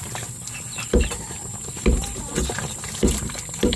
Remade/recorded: recorded